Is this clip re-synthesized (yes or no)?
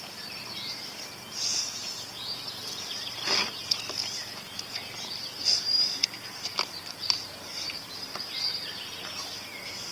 no